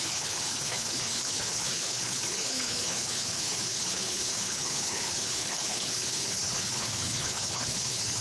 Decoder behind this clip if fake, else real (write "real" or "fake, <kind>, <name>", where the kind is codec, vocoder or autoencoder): fake, codec, HILCodec